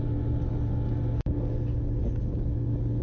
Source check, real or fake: real